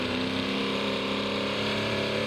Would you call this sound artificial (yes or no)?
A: yes